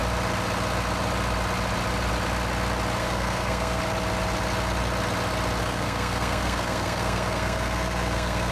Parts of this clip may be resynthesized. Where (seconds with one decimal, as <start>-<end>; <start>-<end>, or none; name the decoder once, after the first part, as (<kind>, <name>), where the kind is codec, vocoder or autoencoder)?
3.0-3.8 (codec, SNAC); 5.6-8.5